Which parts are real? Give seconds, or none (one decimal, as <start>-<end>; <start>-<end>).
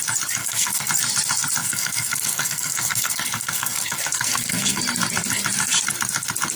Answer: 0.0-0.4; 0.9-1.6; 4.8-6.6